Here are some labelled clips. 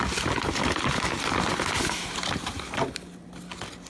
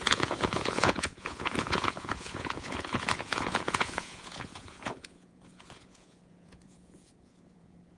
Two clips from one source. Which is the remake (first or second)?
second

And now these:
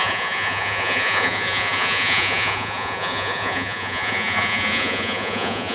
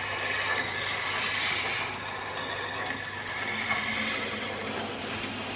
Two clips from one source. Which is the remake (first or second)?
first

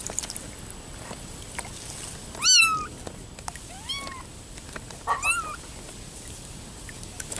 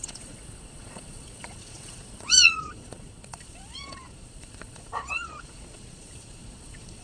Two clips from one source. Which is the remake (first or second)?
second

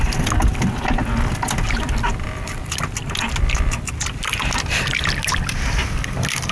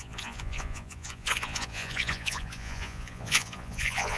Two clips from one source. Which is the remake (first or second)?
second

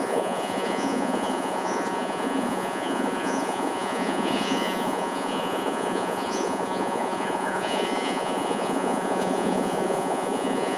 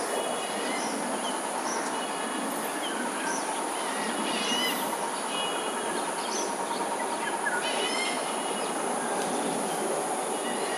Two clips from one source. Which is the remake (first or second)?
first